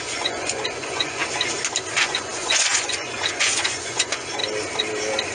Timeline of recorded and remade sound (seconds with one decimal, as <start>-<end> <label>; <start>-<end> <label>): 0.0-1.2 remade; 1.2-1.9 recorded; 1.9-4.4 remade; 4.4-5.3 recorded